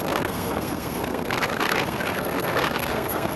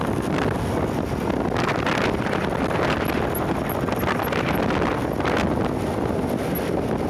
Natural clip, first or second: second